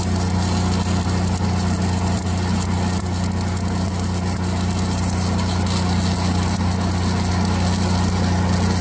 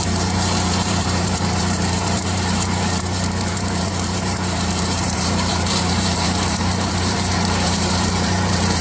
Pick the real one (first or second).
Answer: first